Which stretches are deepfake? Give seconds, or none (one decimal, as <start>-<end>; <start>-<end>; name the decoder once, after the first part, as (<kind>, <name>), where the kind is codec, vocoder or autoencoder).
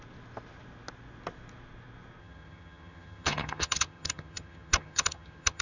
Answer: 2.2-5.6 (vocoder, HiFi-GAN)